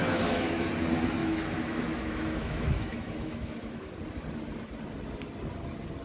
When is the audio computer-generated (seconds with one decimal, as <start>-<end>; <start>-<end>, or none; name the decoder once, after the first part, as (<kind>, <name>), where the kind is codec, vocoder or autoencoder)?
0.0-0.7 (autoencoder, DAC-VAE); 1.2-3.9